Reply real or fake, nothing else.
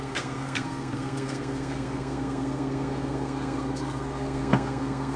fake